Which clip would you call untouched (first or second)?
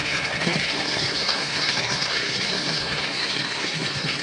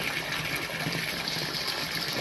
second